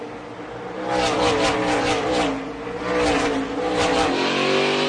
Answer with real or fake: real